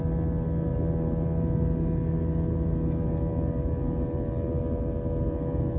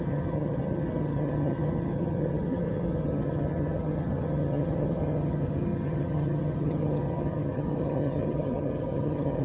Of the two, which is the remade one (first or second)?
second